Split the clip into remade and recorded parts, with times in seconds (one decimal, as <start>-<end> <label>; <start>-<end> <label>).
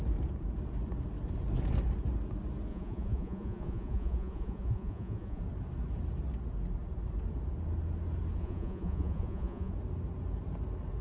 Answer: 0.0-2.7 recorded; 2.7-5.4 remade; 5.4-8.4 recorded; 8.4-9.7 remade; 9.7-11.0 recorded